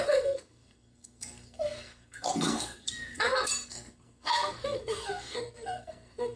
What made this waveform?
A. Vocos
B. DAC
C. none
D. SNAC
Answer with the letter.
D